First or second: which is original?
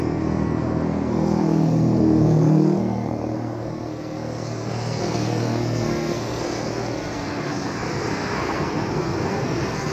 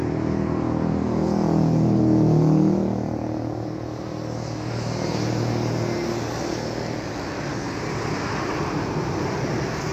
second